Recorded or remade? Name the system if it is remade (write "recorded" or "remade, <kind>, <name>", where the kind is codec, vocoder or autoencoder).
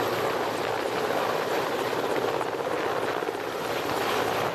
recorded